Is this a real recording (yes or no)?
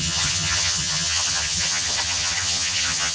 no